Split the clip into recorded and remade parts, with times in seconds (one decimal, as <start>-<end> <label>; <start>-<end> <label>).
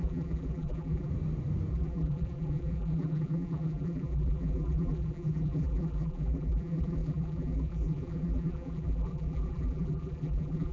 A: 0.0-1.1 remade; 1.1-1.7 recorded; 1.7-10.7 remade